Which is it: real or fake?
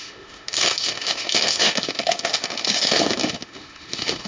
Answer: fake